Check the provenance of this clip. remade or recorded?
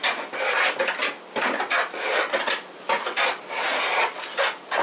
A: recorded